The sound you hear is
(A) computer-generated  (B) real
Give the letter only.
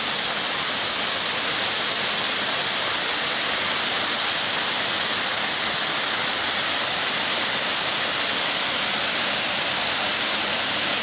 B